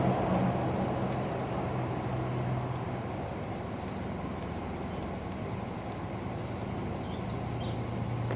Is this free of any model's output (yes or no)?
yes